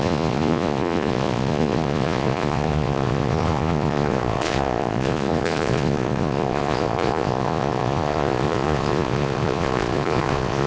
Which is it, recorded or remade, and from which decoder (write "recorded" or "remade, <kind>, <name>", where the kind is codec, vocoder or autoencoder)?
remade, vocoder, Vocos